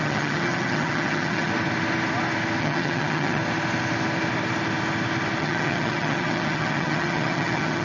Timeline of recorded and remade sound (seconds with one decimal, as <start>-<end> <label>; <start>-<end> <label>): 0.0-1.5 remade; 1.5-2.6 recorded; 2.6-3.4 remade; 3.4-5.4 recorded; 5.4-7.8 remade